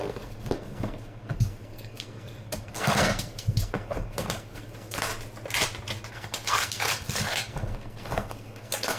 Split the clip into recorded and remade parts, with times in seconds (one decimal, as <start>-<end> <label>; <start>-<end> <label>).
0.0-5.1 remade; 5.1-6.1 recorded; 6.1-9.0 remade